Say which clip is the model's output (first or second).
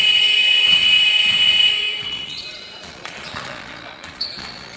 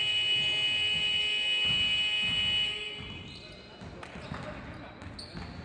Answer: first